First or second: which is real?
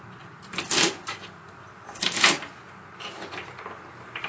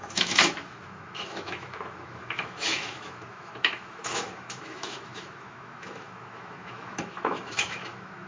first